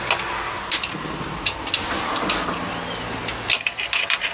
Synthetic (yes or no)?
no